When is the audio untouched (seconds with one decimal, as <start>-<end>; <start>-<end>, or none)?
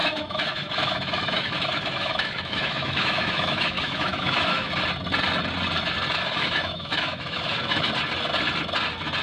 4.7-6.4; 7.9-9.2